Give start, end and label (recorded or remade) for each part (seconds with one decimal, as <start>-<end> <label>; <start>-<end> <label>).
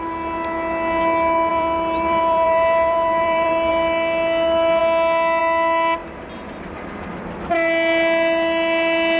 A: 0.0-1.5 recorded; 1.5-3.7 remade; 3.7-9.2 recorded